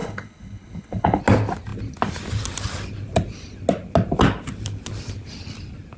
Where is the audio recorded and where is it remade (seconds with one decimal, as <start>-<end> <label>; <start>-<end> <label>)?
0.0-1.2 remade; 1.2-6.0 recorded